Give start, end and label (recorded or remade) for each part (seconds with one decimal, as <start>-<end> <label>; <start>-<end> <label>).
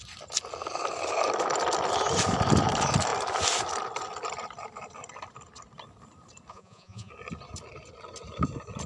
0.0-6.5 recorded; 6.5-7.1 remade; 7.1-8.9 recorded